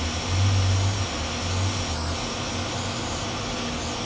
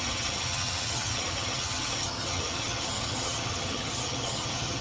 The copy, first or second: second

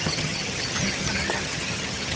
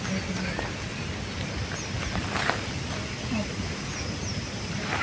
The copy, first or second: first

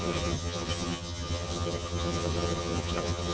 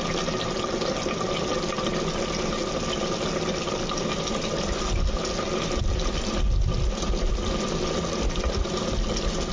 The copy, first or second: first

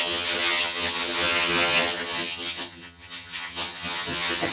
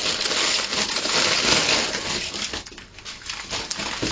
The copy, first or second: first